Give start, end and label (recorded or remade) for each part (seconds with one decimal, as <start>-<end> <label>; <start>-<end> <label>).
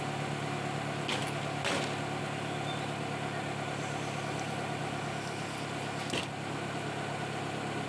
0.0-7.9 recorded